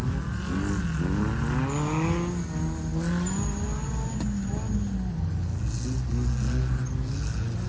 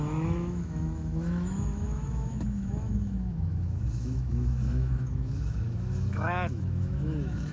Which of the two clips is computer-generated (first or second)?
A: second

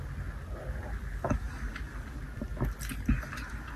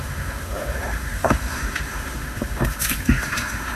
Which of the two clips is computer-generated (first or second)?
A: second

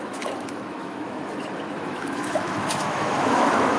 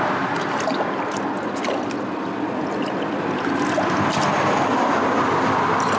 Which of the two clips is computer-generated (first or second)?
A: first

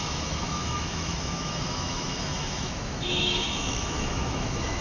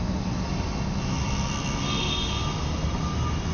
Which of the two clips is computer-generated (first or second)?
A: first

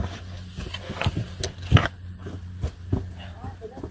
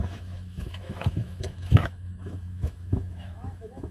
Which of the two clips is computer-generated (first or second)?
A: second